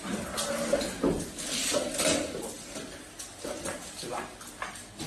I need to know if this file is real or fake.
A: real